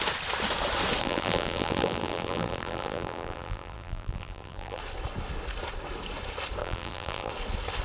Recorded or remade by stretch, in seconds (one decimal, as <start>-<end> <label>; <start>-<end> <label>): 0.0-1.0 recorded; 1.0-4.8 remade; 4.8-6.6 recorded; 6.6-7.3 remade; 7.3-7.8 recorded